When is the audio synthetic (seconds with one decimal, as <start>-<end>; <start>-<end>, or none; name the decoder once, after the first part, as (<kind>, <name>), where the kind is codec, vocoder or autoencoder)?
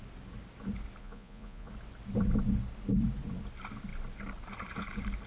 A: 1.0-1.7 (vocoder, Vocos)